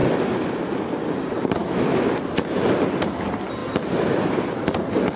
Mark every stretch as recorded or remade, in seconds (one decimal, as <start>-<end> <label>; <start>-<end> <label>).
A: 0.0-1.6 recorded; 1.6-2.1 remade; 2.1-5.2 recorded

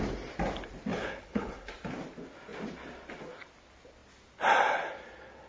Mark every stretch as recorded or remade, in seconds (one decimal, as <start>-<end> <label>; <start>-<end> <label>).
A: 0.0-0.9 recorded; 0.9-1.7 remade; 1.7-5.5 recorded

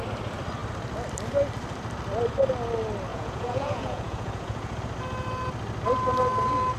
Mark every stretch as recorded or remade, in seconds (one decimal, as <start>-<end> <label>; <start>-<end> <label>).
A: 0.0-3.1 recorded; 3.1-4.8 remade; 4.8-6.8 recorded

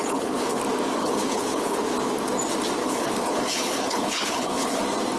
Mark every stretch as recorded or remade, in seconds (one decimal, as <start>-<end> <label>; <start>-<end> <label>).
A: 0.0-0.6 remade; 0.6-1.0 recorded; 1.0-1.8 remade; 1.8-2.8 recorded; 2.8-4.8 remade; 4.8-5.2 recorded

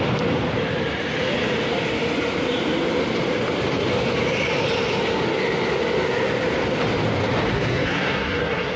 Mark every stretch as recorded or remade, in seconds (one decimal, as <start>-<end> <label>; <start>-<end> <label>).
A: 0.0-7.5 recorded; 7.5-8.8 remade

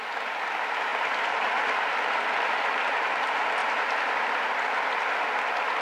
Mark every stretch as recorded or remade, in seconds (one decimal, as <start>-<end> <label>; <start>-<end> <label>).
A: 0.0-5.8 recorded